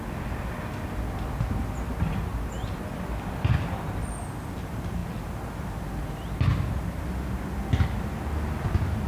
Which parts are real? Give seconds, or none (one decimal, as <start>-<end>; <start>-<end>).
0.0-9.1